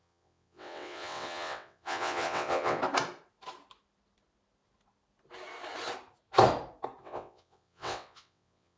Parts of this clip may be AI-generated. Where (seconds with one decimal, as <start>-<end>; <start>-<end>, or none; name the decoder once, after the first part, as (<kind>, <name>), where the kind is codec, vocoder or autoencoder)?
0.0-2.8 (vocoder, WaveNeXt); 7.0-8.8